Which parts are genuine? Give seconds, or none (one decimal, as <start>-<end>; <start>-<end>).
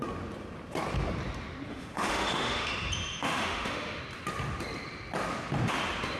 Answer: 0.0-1.7; 2.7-3.2; 4.0-6.2